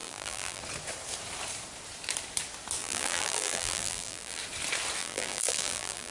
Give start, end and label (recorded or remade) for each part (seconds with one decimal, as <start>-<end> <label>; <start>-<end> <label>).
0.0-0.6 remade; 0.6-2.8 recorded; 2.8-4.4 remade; 4.4-5.0 recorded; 5.0-6.1 remade